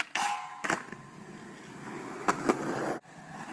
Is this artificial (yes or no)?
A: no